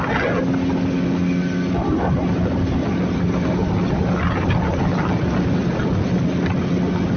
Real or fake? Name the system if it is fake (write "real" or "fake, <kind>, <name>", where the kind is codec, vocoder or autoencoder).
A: real